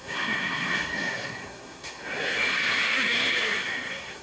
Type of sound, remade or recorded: remade